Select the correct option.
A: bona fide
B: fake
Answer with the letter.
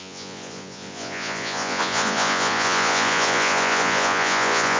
B